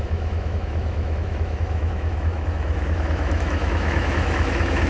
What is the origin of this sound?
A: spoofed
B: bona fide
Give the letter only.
A